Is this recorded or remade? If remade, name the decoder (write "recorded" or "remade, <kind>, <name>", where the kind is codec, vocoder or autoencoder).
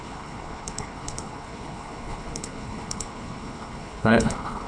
remade, codec, HILCodec